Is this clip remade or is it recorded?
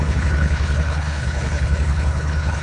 remade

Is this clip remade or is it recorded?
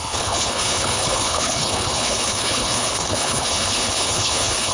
remade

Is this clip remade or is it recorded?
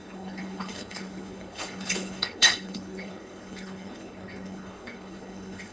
remade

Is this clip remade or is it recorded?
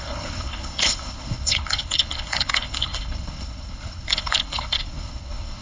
remade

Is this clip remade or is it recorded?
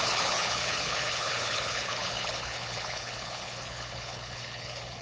remade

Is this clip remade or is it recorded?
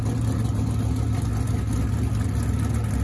recorded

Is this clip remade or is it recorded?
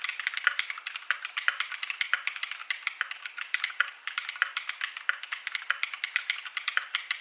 recorded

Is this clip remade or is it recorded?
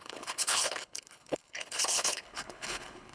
remade